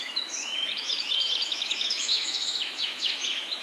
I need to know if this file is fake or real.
fake